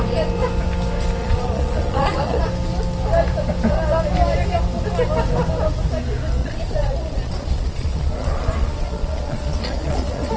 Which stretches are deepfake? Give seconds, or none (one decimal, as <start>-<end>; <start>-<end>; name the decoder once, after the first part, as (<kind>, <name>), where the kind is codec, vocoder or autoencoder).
1.2-2.4 (vocoder, Vocos); 6.4-10.4